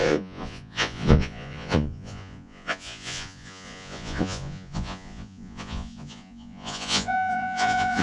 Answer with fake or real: fake